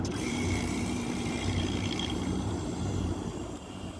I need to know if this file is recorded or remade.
remade